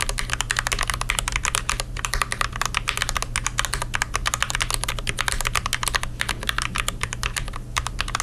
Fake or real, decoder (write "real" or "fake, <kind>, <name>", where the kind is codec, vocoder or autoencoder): real